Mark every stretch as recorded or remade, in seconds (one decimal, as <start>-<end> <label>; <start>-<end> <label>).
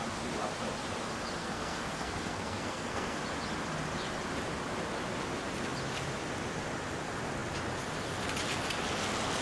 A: 0.0-1.4 recorded; 1.4-3.2 remade; 3.2-9.4 recorded